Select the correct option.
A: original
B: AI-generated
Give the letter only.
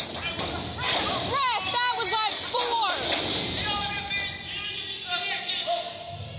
A